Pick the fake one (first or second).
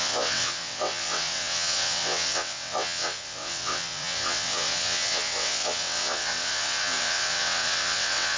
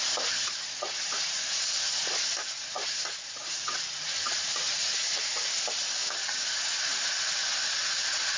first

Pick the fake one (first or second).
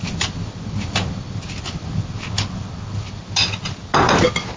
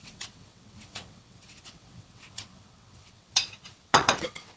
second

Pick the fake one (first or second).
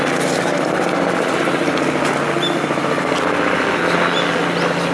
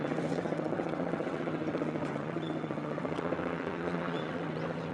second